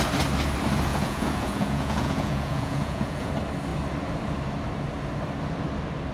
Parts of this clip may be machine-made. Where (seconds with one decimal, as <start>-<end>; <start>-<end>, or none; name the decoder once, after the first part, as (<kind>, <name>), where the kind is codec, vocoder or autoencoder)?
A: 0.9-3.3 (vocoder, Vocos)